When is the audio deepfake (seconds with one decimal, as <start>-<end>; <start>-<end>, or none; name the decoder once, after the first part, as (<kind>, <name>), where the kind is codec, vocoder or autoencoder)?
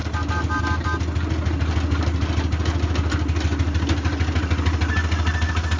none